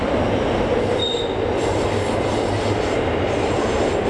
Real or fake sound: real